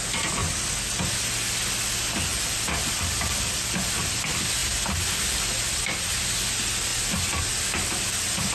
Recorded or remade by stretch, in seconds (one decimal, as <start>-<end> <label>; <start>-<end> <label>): 0.0-8.5 recorded